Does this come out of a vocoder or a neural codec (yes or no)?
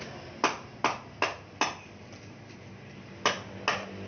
no